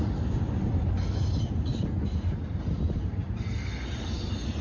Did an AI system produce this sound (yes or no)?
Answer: no